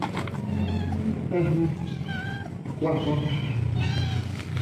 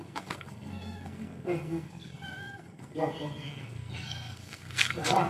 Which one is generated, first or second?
second